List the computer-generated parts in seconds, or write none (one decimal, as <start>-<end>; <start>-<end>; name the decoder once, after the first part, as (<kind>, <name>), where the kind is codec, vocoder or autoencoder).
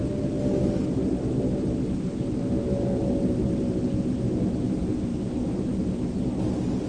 none